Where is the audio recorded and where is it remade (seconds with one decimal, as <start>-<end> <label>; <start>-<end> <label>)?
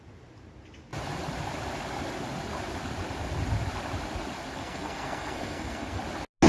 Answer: 0.0-4.6 recorded; 4.6-6.0 remade; 6.0-6.5 recorded